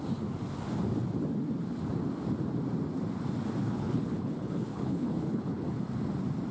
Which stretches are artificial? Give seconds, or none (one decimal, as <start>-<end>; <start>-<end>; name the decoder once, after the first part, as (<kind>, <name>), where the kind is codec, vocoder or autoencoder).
3.6-5.8 (codec, HILCodec)